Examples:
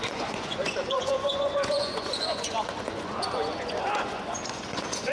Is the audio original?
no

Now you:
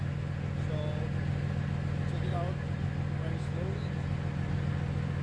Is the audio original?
yes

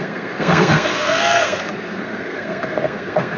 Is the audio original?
no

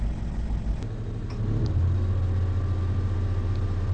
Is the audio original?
yes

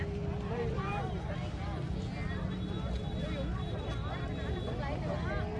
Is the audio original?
yes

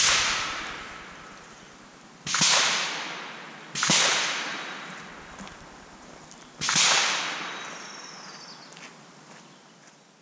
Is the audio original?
yes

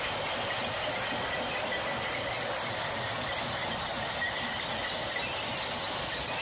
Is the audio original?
yes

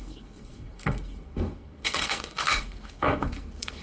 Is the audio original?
no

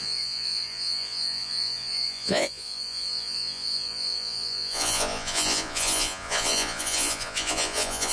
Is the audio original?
no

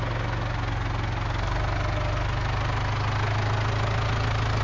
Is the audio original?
yes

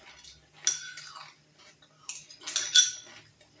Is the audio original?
yes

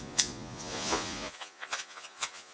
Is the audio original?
no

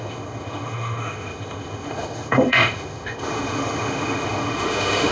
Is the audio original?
no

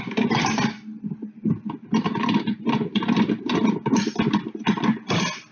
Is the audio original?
yes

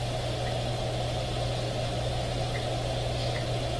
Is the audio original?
yes